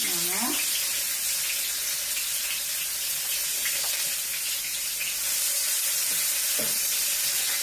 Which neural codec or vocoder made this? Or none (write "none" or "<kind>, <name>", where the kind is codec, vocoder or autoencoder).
none